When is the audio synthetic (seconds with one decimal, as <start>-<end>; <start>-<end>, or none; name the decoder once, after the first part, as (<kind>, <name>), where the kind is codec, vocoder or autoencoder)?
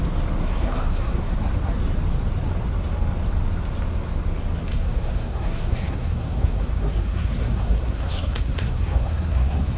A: 0.4-1.3 (codec, SNAC); 4.7-9.8